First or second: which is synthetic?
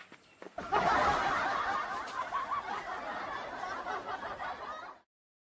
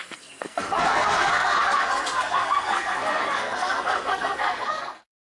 second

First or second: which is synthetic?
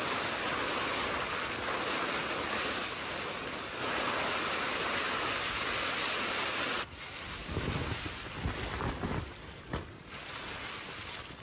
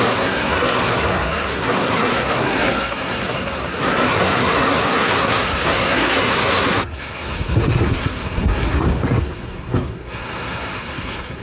second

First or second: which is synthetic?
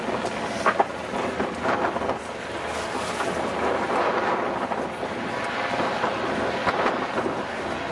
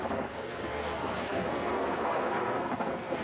second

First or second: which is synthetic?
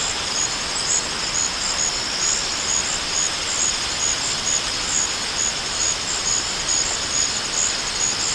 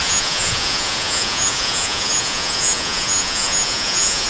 second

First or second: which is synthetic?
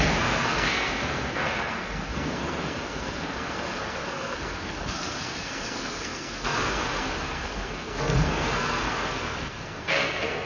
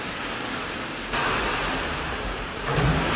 first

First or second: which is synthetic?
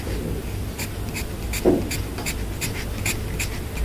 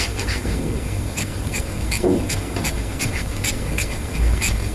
second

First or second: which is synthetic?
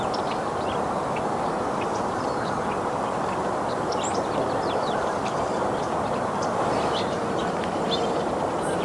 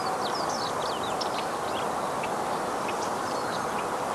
first